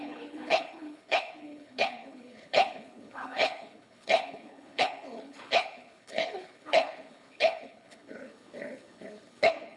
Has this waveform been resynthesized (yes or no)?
yes